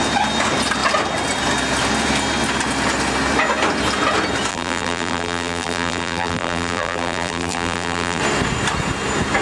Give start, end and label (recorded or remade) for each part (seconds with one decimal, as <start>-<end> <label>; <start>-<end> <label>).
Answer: 0.0-4.5 recorded; 4.5-8.2 remade; 8.2-9.4 recorded